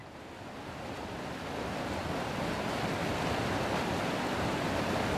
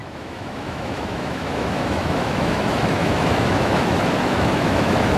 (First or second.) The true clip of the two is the first